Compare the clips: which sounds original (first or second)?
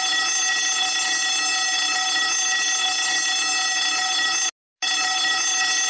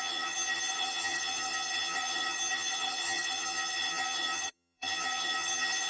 first